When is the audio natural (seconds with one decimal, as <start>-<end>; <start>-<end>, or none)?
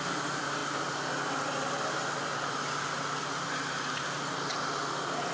0.0-5.3